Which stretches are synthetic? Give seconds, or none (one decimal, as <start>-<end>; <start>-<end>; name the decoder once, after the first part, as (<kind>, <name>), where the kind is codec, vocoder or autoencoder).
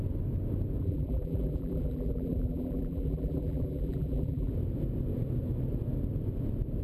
0.8-4.5 (vocoder, BigVGAN v2)